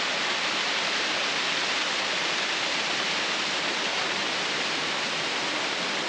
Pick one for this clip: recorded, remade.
remade